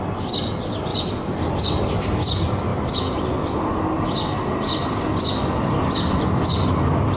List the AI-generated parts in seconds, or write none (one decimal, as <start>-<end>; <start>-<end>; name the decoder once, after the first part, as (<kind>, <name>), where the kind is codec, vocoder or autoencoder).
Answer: none